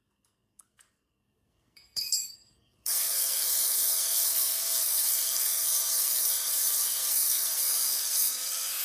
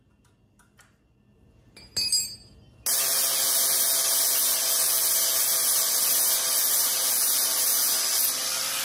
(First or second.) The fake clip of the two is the first